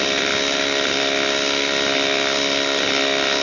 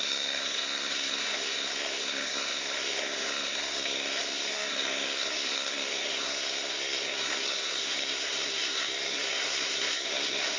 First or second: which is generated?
second